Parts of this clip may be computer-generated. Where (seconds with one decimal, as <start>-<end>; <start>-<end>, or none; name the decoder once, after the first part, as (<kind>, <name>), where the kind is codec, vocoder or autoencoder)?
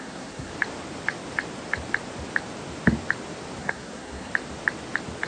0.0-0.5 (codec, SNAC); 3.6-4.3